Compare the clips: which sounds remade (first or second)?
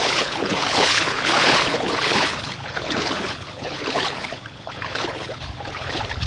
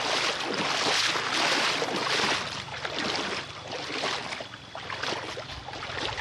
first